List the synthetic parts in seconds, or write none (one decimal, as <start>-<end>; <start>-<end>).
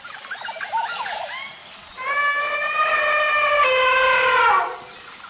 none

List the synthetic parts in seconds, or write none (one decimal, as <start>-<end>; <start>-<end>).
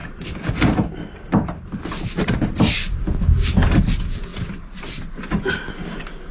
none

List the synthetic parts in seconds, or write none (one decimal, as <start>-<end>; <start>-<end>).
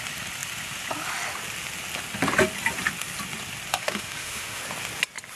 3.7-4.6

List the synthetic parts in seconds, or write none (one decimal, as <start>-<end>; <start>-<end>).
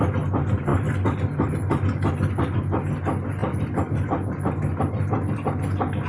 none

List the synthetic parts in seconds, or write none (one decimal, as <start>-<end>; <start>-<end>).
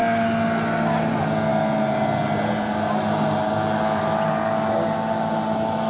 none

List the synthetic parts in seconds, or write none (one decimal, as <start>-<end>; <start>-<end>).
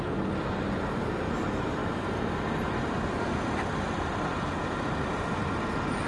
1.8-5.4